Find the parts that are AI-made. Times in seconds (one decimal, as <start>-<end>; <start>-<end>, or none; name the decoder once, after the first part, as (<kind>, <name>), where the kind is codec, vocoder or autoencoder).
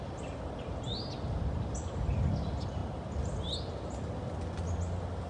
none